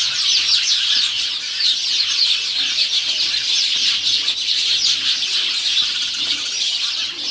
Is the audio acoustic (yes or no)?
yes